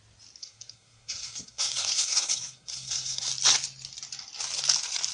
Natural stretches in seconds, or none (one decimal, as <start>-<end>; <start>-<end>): 0.0-0.4; 3.3-5.1